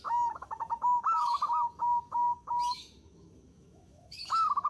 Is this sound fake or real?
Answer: fake